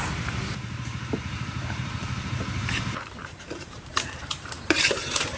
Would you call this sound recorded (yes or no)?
no